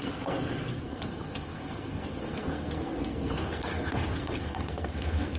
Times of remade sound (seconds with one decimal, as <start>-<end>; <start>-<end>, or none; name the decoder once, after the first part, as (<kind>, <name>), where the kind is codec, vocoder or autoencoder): 0.0-5.4 (codec, SNAC)